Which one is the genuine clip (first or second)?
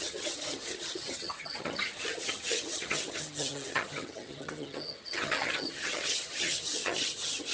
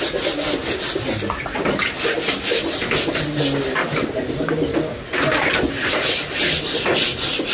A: second